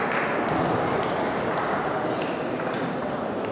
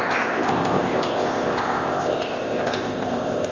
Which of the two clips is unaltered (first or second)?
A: first